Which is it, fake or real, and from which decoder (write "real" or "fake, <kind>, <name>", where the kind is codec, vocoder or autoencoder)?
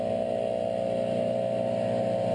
real